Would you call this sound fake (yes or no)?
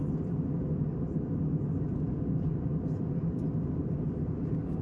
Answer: no